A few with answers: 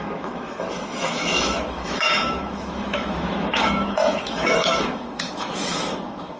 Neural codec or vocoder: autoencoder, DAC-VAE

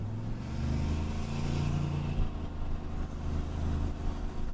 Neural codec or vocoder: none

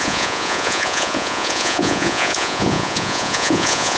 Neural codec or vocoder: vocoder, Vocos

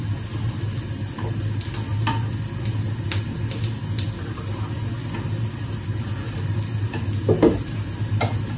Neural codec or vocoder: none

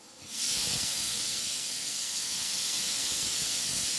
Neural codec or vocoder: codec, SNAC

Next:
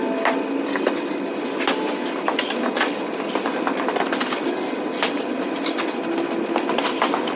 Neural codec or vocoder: none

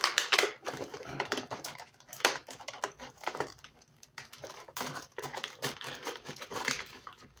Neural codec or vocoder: codec, DAC